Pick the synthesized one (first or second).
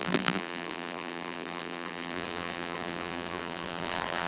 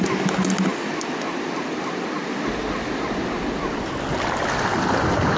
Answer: first